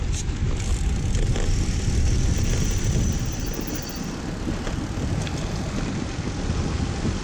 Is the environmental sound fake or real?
real